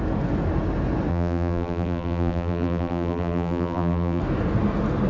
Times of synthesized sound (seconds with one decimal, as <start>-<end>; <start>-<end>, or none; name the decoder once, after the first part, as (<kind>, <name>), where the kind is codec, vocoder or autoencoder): 1.1-4.2 (vocoder, BigVGAN v2)

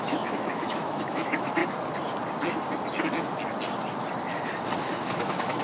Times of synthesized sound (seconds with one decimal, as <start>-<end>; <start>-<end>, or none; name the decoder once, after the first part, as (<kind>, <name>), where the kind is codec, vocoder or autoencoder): 0.0-1.6 (autoencoder, DAC-VAE); 5.0-5.6

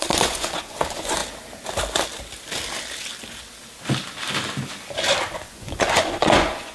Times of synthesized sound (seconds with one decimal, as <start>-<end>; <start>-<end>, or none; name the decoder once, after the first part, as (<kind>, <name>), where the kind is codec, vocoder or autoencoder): 0.0-1.2 (vocoder, Vocos); 5.2-6.7